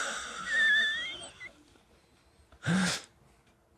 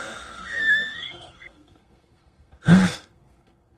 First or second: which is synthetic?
second